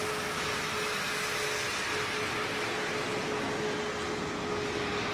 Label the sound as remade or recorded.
recorded